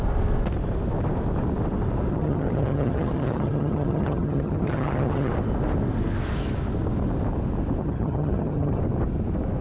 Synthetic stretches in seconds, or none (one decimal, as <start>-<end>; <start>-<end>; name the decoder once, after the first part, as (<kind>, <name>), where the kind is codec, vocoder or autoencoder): 2.1-5.3 (vocoder, HiFi-GAN); 7.8-8.8